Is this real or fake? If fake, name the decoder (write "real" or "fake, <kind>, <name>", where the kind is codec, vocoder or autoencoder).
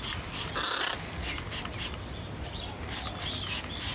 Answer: real